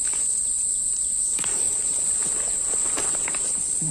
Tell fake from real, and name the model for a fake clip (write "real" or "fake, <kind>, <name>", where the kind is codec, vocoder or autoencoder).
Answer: real